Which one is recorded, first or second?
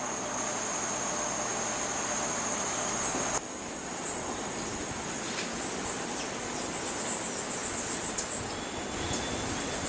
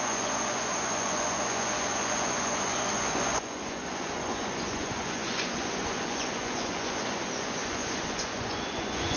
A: first